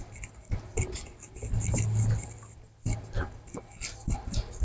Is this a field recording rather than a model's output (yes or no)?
yes